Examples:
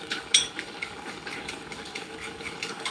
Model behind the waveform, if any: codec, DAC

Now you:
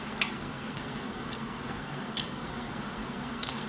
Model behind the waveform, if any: codec, SNAC